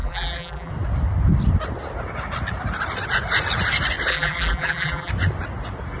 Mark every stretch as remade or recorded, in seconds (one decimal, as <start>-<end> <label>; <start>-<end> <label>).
0.0-0.7 remade; 0.7-4.1 recorded; 4.1-5.1 remade; 5.1-6.0 recorded